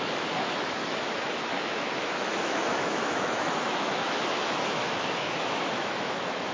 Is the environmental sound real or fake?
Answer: fake